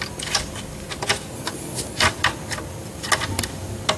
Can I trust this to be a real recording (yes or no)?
yes